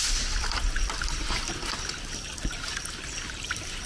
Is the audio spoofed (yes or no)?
no